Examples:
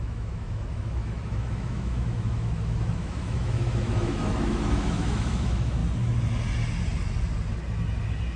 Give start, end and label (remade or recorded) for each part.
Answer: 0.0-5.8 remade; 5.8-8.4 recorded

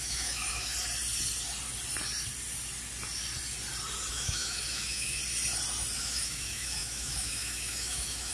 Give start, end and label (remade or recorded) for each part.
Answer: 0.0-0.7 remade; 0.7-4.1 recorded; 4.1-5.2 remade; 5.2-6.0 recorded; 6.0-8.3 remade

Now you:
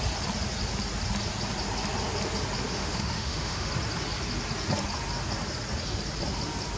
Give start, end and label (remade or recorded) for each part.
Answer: 0.0-2.7 recorded; 2.7-3.7 remade; 3.7-6.8 recorded

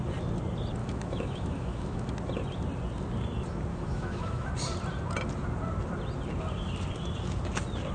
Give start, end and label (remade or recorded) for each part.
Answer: 0.0-0.8 recorded; 0.8-2.1 remade; 2.1-3.7 recorded; 3.7-4.5 remade; 4.5-7.9 recorded

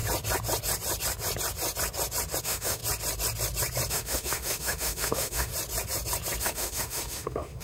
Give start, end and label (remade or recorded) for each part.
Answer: 0.0-2.4 recorded; 2.4-2.8 remade; 2.8-3.9 recorded; 3.9-5.5 remade; 5.5-6.4 recorded; 6.4-7.6 remade

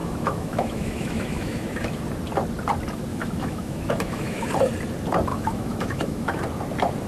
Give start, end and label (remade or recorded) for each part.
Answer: 0.0-2.0 remade; 2.0-3.1 recorded; 3.1-4.5 remade; 4.5-5.3 recorded; 5.3-6.4 remade; 6.4-7.1 recorded